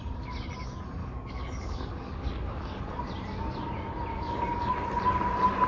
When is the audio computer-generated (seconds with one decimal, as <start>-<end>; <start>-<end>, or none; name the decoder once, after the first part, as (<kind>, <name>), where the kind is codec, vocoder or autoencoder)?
1.0-2.8 (codec, DAC); 4.1-4.7